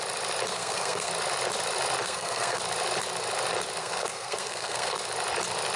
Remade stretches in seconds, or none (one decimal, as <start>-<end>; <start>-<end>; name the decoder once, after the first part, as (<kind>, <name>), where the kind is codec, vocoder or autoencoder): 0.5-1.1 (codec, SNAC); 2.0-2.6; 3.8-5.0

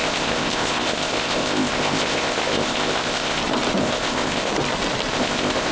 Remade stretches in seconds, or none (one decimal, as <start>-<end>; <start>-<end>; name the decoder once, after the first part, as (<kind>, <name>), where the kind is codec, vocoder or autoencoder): 0.0-3.4 (codec, ZipCodec); 3.8-4.5; 5.1-5.7

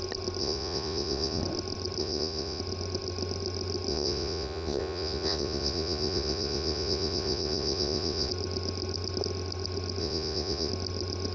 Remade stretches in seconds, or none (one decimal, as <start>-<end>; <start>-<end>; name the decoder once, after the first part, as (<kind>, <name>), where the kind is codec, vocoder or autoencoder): 0.4-1.4 (vocoder, Vocos); 2.0-2.6; 3.9-8.3; 10.0-10.7

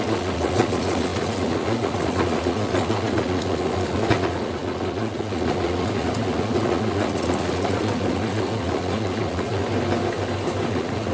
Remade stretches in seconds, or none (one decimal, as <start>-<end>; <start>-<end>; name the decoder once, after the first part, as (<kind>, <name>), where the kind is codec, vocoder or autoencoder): 0.0-9.6 (vocoder, Vocos); 10.7-11.1

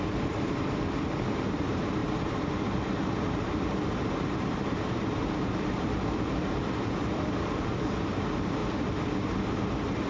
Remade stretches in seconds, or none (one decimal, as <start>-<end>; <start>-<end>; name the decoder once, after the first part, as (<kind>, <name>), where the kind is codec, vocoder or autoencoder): 0.0-8.6 (vocoder, BigVGAN v2); 9.5-10.1

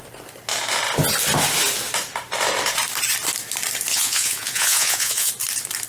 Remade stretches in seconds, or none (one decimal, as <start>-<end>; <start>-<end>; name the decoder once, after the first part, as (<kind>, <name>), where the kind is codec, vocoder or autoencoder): 3.9-5.3 (vocoder, Vocos)